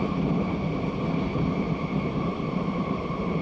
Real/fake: fake